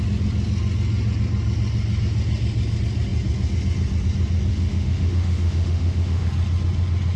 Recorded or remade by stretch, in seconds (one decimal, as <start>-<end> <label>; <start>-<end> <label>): 0.0-4.5 recorded; 4.5-6.3 remade; 6.3-7.2 recorded